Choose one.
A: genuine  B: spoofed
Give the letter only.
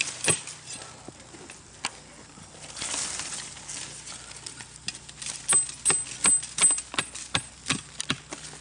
A